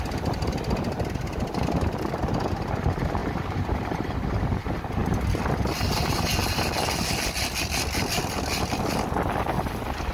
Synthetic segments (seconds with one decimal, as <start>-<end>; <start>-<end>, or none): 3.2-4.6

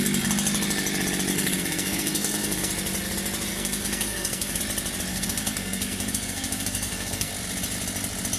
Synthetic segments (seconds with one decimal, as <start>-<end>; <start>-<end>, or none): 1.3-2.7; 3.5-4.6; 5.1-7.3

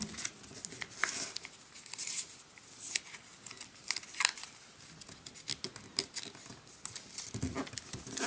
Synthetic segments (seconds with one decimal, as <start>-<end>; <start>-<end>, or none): none

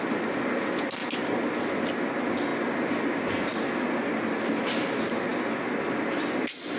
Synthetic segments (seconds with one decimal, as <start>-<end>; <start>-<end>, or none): none

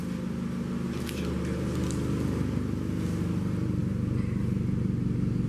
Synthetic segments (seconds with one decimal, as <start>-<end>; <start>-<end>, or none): none

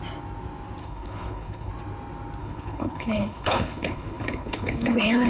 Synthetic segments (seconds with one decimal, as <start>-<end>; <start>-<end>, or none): 0.8-1.7; 2.4-5.3

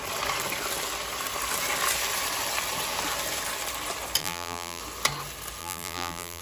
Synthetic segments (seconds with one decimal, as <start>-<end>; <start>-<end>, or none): 4.2-4.8; 5.6-6.4